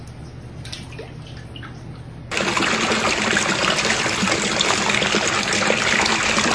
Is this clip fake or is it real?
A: real